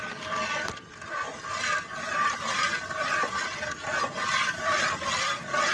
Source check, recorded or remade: recorded